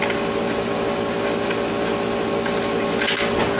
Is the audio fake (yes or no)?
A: no